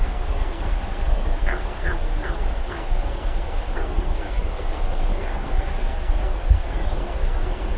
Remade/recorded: remade